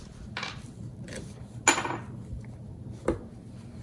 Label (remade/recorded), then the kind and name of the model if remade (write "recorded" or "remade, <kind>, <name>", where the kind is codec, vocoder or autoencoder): recorded